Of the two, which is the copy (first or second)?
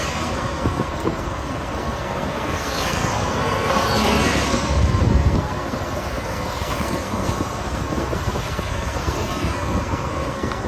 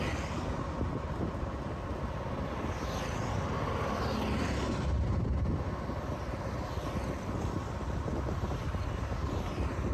first